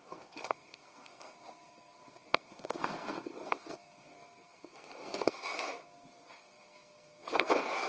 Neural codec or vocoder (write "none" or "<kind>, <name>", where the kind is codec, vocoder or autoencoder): codec, SNAC